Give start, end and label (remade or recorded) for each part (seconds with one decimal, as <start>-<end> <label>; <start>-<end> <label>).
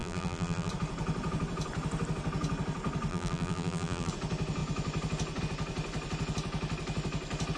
0.0-0.7 remade; 0.7-3.1 recorded; 3.1-4.1 remade; 4.1-7.6 recorded